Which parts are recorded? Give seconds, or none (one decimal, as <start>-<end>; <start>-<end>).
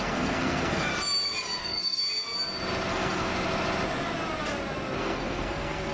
0.9-1.6; 2.0-2.9; 3.3-5.0